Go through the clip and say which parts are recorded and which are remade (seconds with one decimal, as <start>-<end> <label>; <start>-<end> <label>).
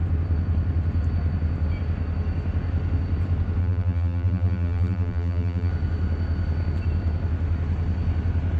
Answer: 0.0-3.6 recorded; 3.6-5.7 remade; 5.7-8.6 recorded